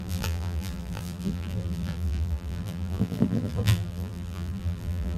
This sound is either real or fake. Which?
fake